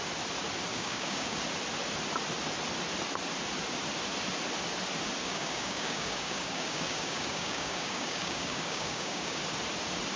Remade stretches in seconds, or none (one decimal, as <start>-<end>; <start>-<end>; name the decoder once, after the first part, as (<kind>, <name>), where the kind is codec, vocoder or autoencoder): 0.7-1.4 (codec, DAC); 5.2-9.4